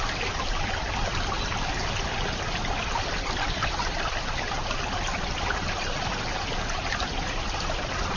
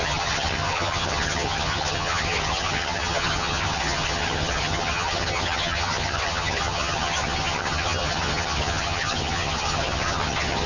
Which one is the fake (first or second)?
second